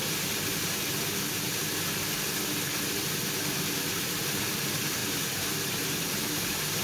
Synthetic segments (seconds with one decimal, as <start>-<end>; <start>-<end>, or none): 0.0-1.6; 2.9-6.8